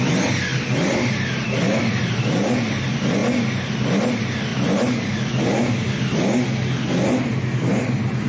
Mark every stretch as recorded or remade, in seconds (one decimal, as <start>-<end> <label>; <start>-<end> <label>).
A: 0.0-8.3 recorded